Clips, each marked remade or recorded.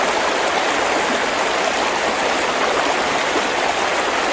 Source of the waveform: recorded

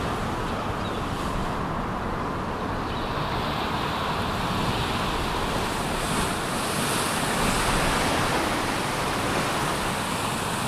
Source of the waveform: recorded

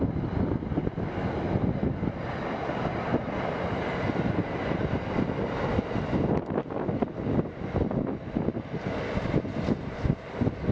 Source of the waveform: recorded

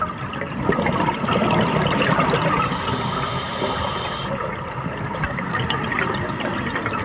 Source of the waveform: recorded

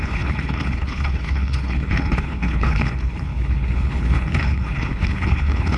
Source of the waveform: remade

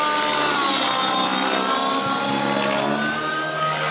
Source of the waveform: recorded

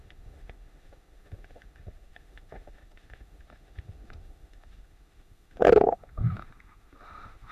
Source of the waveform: remade